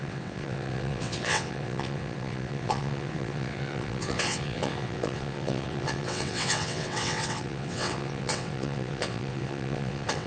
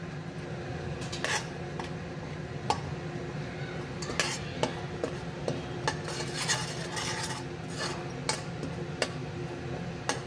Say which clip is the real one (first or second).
second